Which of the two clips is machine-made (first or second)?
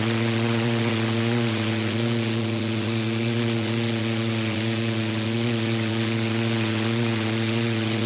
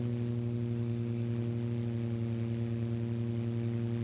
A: first